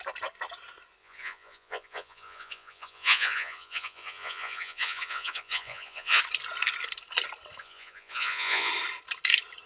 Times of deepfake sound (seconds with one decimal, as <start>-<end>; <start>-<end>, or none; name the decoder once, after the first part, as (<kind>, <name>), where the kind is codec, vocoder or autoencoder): 1.0-6.2 (vocoder, Vocos); 7.6-8.7